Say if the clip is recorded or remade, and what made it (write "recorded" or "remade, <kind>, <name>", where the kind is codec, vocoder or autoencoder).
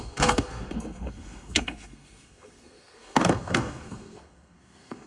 remade, codec, SNAC